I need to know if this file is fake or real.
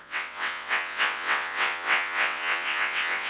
fake